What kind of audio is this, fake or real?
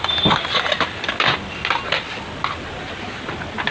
real